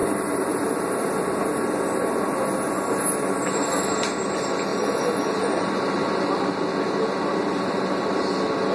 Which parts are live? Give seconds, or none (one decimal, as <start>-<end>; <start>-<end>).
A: 1.1-4.7; 5.8-7.5; 8.0-8.7